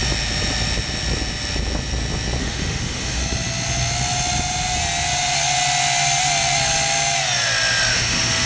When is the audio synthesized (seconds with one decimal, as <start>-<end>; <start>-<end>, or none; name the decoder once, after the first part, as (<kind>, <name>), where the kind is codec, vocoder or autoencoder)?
2.4-3.2 (autoencoder, DAC-VAE); 7.9-8.5